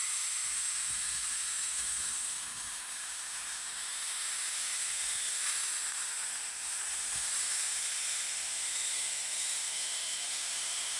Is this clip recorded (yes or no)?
no